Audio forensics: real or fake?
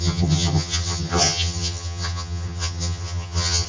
fake